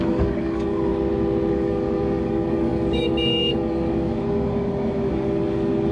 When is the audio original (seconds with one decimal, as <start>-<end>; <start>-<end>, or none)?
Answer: 0.9-1.5